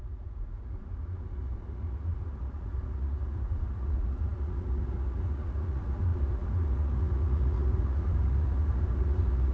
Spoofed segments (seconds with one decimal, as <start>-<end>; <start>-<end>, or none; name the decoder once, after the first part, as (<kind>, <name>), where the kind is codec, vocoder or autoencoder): 0.0-9.5 (vocoder, Vocos)